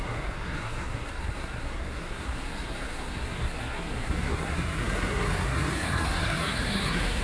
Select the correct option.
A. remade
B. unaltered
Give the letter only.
A